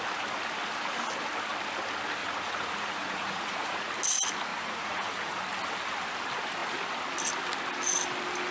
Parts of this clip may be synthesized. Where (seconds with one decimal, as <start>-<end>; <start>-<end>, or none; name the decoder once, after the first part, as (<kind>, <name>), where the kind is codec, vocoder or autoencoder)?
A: 2.2-3.9 (vocoder, Vocos); 4.5-5.4